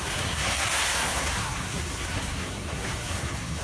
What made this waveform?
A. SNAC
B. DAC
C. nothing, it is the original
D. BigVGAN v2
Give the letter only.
A